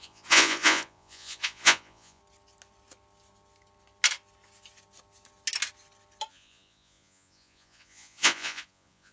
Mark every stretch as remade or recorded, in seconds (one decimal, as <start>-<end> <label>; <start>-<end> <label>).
0.0-2.2 remade; 2.2-6.3 recorded; 6.3-9.1 remade